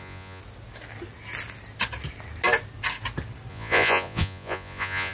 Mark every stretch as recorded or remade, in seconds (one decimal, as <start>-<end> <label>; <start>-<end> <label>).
0.0-0.4 remade; 0.4-3.5 recorded; 3.5-5.1 remade